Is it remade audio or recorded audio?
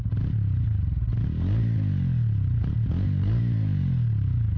recorded